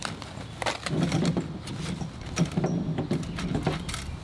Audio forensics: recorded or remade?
recorded